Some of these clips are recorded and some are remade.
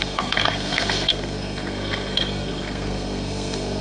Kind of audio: remade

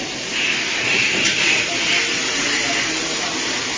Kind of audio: recorded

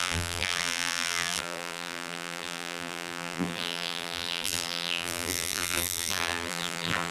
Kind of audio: remade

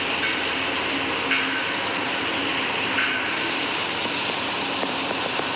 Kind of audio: recorded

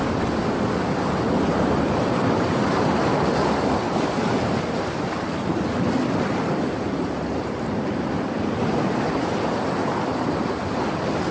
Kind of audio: recorded